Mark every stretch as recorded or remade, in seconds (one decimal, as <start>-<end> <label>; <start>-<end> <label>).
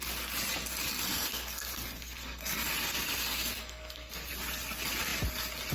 0.0-0.9 recorded; 0.9-4.3 remade; 4.3-5.7 recorded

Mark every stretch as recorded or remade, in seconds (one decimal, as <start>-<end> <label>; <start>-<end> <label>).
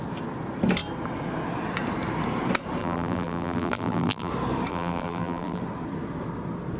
0.0-2.8 recorded; 2.8-4.3 remade; 4.3-4.7 recorded; 4.7-5.6 remade; 5.6-6.8 recorded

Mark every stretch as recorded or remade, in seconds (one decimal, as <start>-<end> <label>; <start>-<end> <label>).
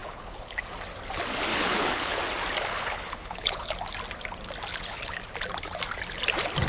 0.0-0.6 remade; 0.6-1.5 recorded; 1.5-2.2 remade; 2.2-2.7 recorded; 2.7-3.7 remade; 3.7-4.7 recorded; 4.7-5.2 remade; 5.2-6.7 recorded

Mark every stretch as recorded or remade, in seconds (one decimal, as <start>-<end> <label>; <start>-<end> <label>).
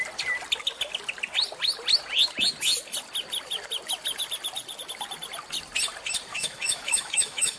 0.0-6.3 recorded; 6.3-7.6 remade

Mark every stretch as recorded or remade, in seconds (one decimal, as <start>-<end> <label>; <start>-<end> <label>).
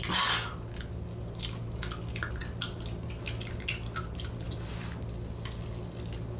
0.0-6.4 recorded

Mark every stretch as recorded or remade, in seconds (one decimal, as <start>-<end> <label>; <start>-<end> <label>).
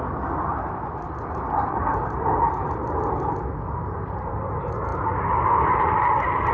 0.0-6.5 recorded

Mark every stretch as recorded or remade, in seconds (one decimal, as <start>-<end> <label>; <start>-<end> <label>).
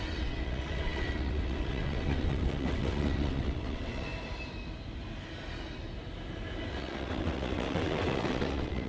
0.0-4.1 remade; 4.1-6.7 recorded; 6.7-8.9 remade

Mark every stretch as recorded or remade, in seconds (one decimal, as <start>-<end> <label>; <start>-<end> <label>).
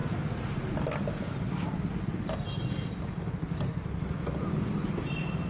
0.0-5.5 recorded